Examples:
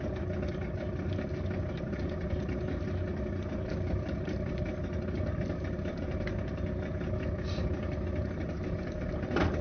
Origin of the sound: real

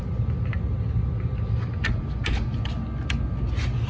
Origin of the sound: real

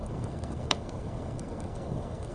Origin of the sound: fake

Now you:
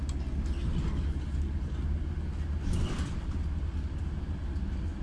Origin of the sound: real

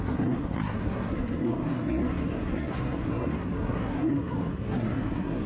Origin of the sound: fake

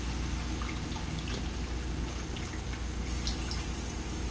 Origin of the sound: real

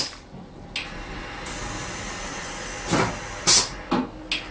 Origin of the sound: real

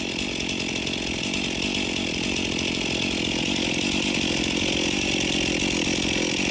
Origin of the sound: real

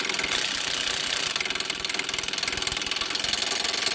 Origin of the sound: real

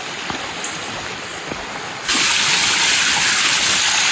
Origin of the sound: real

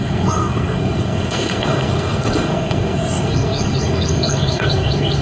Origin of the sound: fake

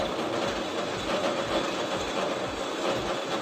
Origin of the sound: real